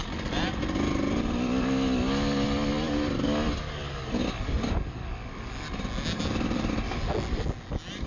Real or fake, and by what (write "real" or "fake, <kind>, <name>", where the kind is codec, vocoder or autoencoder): real